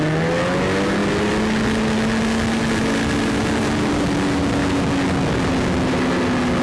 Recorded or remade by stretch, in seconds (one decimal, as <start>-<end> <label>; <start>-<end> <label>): 0.0-6.6 recorded